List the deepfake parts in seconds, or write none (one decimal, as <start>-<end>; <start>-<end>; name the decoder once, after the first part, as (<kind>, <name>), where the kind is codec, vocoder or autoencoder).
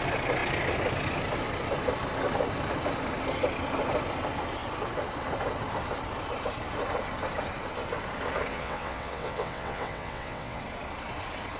8.5-10.6 (vocoder, WaveNeXt)